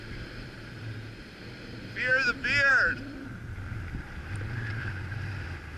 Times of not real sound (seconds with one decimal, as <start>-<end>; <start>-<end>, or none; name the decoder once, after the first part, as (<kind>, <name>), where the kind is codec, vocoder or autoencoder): 0.0-2.1 (vocoder, BigVGAN v2); 2.7-5.8

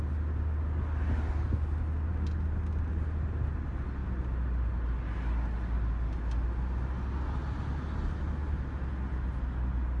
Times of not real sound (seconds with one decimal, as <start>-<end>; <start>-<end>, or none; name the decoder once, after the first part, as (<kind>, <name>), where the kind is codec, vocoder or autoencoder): none

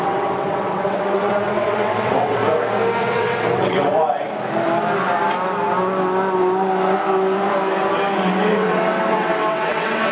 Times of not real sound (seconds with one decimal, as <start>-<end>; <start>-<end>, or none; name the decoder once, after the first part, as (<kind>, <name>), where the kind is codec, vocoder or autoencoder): 0.0-2.4 (vocoder, WaveNeXt); 3.0-4.0; 8.5-10.1